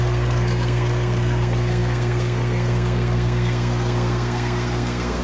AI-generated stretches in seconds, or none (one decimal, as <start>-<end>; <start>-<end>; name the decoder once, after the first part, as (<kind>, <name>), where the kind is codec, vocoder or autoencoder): 0.0-5.2 (codec, SNAC)